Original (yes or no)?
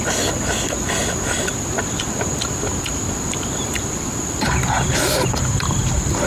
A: no